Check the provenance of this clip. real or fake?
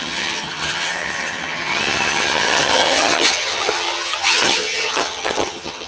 fake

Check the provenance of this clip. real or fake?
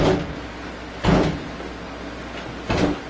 real